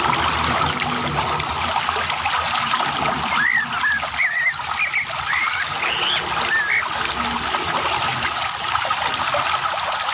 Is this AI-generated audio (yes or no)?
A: no